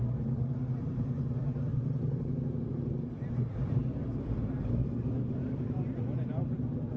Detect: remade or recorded remade